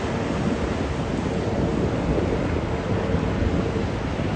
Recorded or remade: recorded